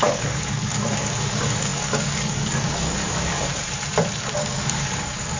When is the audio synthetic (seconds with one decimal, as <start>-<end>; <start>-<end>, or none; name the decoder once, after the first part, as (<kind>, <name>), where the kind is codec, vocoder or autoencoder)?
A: 0.0-3.5 (codec, DAC); 4.4-5.4